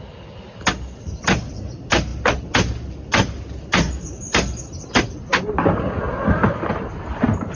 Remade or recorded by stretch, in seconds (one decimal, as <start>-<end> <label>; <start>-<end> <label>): 0.0-7.5 recorded